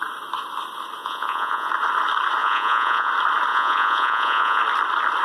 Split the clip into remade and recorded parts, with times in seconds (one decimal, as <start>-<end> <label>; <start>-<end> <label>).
0.0-1.0 recorded; 1.0-1.7 remade; 1.7-2.4 recorded; 2.4-3.1 remade; 3.1-3.5 recorded; 3.5-4.6 remade; 4.6-5.2 recorded